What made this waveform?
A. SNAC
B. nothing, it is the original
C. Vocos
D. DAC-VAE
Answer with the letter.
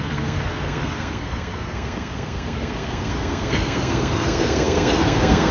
A